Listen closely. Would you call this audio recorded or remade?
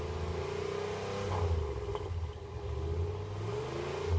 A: recorded